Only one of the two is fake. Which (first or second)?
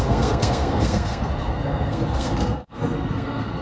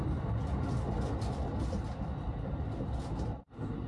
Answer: first